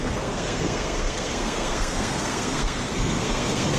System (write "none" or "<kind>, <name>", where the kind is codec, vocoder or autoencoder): codec, SNAC